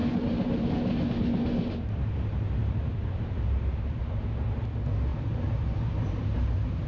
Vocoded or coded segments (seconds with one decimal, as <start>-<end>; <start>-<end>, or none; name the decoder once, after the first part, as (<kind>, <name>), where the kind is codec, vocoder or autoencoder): 0.0-0.7 (vocoder, BigVGAN v2); 2.6-4.2; 5.1-6.9